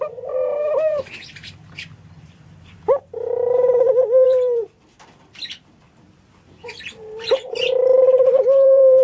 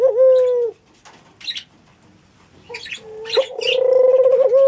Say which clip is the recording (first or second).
second